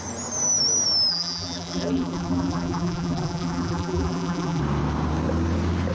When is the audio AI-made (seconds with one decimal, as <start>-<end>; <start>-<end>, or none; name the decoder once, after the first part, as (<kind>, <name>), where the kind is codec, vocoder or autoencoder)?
1.1-4.6 (vocoder, BigVGAN v2)